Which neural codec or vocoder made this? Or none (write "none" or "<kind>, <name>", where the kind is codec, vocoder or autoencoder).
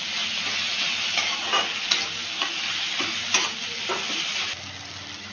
none